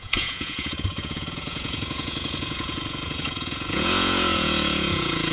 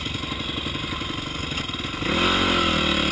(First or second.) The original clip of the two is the second